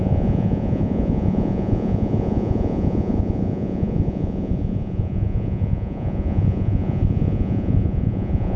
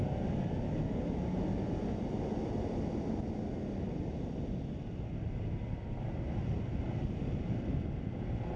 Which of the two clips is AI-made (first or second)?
first